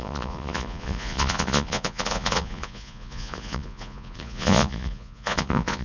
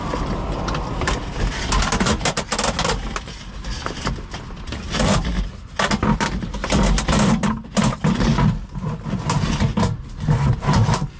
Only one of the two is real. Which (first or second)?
second